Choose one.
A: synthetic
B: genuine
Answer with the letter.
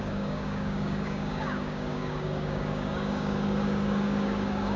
A